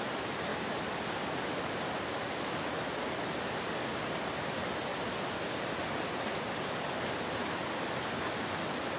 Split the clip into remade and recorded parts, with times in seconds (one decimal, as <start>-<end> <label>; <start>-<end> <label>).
0.0-9.0 recorded